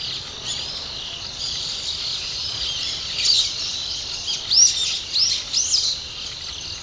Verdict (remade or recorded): recorded